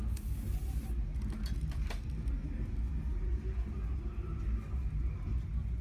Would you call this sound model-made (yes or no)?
no